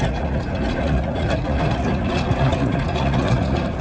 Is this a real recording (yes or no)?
no